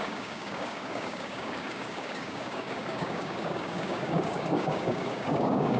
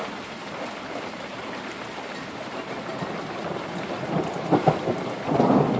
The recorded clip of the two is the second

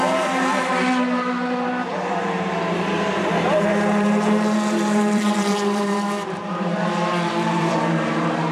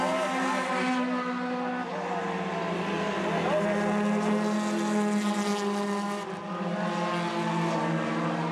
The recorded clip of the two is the second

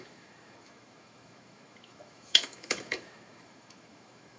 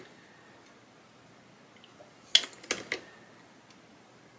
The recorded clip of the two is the second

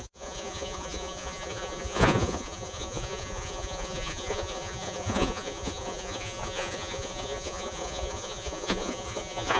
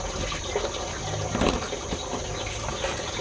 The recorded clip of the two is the second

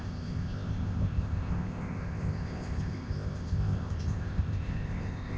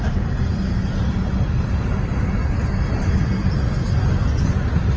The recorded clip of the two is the second